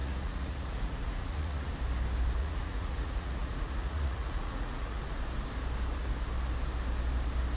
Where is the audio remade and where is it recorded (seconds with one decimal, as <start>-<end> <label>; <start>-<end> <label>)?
0.0-1.7 remade; 1.7-2.4 recorded; 2.4-5.0 remade; 5.0-7.6 recorded